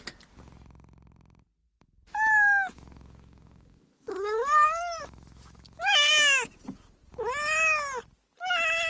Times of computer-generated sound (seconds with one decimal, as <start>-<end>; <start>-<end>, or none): 1.6-6.1